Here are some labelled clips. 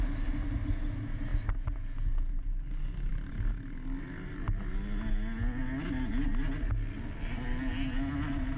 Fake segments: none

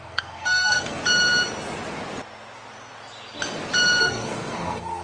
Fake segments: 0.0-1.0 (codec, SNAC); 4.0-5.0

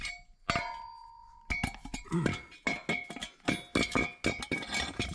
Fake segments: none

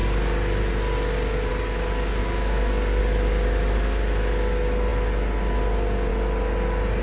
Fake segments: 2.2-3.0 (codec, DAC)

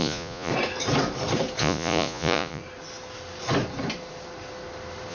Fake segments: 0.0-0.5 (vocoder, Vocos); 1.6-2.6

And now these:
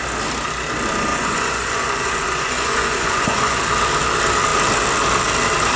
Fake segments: 1.1-3.6 (vocoder, Vocos)

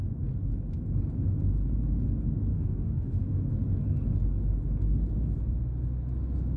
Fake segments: 2.5-3.5 (autoencoder, DAC-VAE)